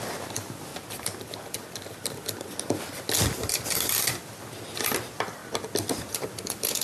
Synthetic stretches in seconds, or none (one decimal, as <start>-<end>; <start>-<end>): 0.0-0.7; 3.5-5.4; 6.1-6.8